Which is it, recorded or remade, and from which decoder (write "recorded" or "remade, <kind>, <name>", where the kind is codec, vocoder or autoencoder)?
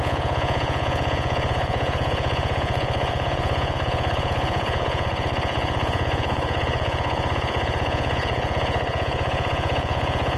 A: remade, vocoder, Vocos